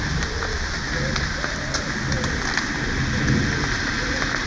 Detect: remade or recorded recorded